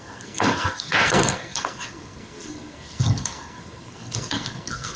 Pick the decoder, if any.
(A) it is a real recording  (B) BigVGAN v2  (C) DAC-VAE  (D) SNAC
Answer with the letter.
D